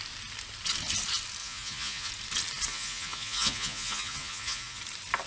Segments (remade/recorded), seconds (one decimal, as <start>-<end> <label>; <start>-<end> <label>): 0.0-1.4 recorded; 1.4-2.1 remade; 2.1-2.7 recorded; 2.7-4.8 remade; 4.8-5.3 recorded

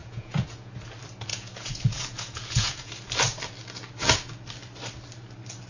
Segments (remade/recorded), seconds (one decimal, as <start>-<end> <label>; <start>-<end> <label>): 0.0-0.7 remade; 0.7-1.3 recorded; 1.3-2.9 remade; 2.9-5.7 recorded